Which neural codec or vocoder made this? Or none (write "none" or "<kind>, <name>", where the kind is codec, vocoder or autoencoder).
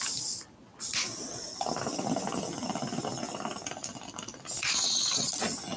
none